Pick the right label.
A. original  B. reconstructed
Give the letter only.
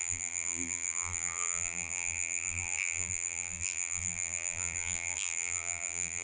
B